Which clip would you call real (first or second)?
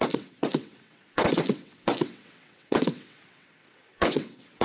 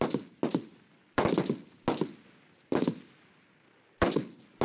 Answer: second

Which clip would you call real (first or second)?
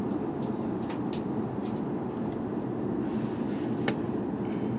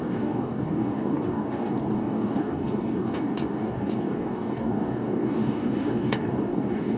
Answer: first